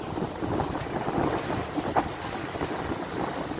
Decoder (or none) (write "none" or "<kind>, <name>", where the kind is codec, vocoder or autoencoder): none